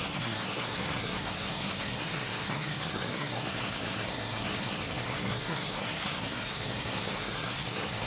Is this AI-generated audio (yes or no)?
yes